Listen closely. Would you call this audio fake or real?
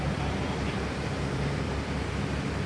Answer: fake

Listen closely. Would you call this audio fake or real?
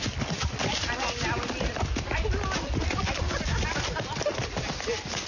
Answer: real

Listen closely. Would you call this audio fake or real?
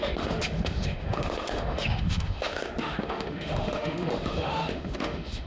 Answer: fake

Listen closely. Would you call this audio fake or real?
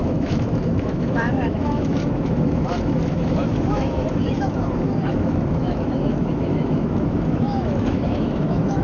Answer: fake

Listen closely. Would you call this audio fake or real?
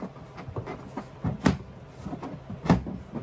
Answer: real